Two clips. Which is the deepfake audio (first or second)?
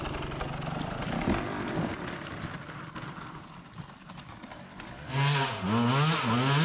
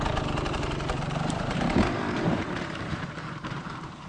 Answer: second